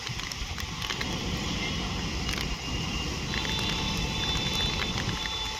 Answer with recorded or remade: recorded